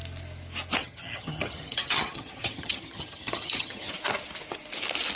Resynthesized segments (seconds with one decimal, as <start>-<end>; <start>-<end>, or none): 0.8-3.9